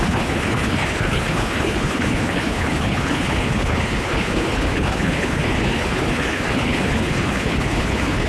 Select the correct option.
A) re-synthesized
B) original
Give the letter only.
A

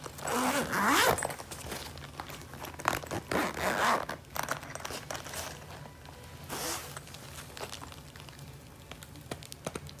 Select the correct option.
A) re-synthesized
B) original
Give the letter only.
B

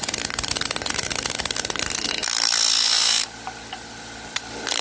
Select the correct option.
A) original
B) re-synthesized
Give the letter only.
A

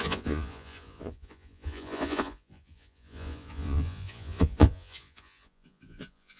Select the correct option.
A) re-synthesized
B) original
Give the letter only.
A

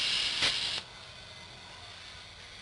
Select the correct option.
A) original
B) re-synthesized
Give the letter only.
A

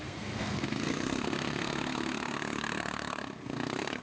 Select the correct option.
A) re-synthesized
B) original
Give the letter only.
A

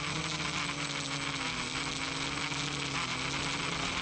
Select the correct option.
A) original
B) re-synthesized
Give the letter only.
A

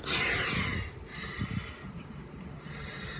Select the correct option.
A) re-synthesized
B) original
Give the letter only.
B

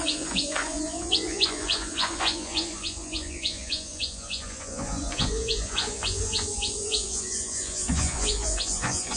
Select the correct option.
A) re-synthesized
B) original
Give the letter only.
A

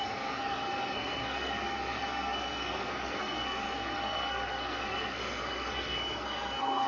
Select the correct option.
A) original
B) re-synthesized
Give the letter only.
B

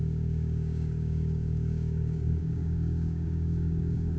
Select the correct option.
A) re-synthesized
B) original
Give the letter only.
A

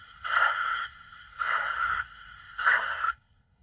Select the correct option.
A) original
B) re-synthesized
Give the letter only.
B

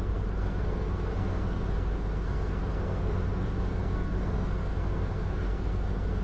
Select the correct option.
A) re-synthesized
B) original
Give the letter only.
A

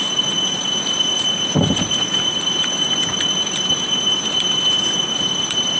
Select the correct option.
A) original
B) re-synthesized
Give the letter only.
A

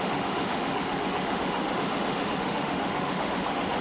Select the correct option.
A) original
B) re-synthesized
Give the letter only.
B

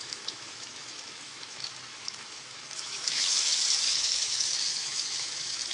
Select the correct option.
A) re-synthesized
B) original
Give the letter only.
A